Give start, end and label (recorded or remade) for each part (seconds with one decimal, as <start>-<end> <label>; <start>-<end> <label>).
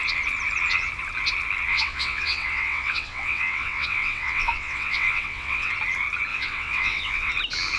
0.0-1.7 recorded; 1.7-5.7 remade; 5.7-6.3 recorded; 6.3-7.3 remade; 7.3-7.8 recorded